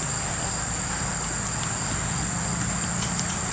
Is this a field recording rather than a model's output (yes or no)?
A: yes